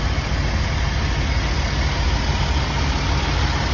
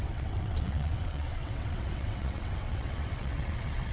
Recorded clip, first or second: first